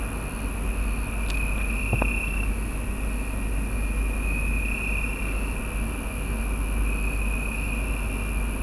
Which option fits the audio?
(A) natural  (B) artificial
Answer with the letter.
A